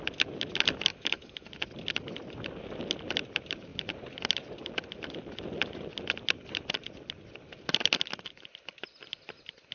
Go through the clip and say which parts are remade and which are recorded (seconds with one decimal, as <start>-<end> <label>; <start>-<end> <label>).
0.0-0.9 recorded; 0.9-1.5 remade; 1.5-9.7 recorded